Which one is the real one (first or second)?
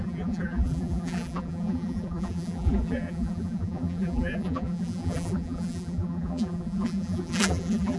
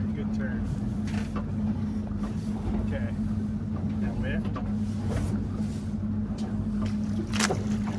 second